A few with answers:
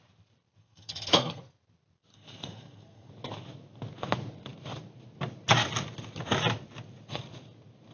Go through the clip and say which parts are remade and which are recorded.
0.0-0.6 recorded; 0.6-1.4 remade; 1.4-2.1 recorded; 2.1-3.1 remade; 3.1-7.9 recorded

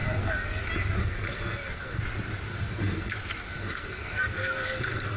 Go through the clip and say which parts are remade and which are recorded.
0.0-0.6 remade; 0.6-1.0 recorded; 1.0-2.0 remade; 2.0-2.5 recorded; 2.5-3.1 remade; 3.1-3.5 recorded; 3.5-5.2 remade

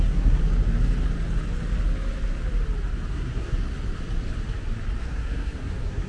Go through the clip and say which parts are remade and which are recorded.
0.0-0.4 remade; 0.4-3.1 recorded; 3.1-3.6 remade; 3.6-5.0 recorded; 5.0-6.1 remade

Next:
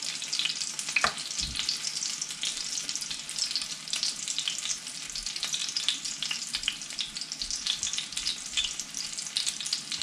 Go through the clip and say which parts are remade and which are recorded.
0.0-10.0 recorded

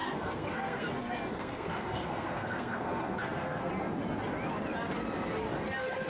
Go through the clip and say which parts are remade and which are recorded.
0.0-3.7 remade; 3.7-6.1 recorded

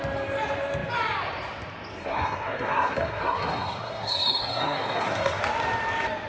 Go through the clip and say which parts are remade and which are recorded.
0.0-2.0 recorded; 2.0-5.4 remade; 5.4-6.3 recorded